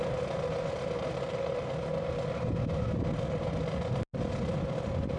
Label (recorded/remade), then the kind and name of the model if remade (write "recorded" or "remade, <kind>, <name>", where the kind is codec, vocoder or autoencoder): recorded